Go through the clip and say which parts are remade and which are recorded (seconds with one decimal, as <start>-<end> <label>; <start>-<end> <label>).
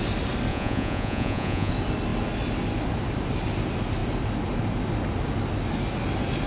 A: 0.0-0.5 recorded; 0.5-1.7 remade; 1.7-6.5 recorded